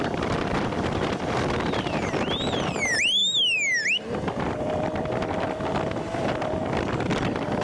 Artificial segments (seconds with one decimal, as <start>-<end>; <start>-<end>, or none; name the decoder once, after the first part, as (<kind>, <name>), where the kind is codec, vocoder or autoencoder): 0.0-3.2 (vocoder, BigVGAN v2); 4.0-7.6